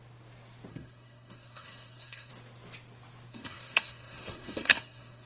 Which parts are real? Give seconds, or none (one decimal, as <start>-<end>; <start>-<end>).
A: 0.0-0.7; 2.3-3.3